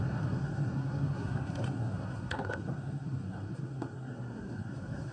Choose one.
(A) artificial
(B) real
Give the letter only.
A